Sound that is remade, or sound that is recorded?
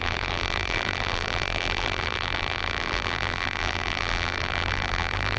remade